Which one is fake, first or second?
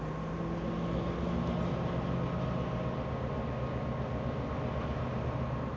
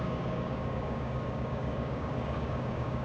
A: second